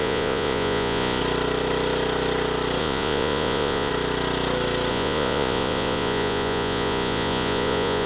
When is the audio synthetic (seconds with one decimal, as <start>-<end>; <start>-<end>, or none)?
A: 0.0-1.2; 2.8-3.9; 4.9-8.1